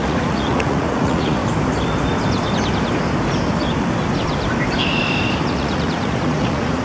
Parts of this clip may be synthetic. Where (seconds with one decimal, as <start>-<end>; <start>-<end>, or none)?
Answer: 0.0-1.4; 5.5-6.8